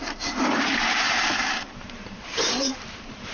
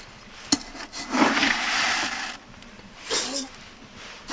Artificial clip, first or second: first